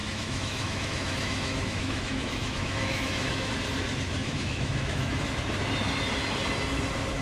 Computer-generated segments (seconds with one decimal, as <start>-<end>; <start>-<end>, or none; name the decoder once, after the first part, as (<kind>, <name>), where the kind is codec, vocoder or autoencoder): 0.0-3.5 (autoencoder, DAC-VAE); 4.2-5.2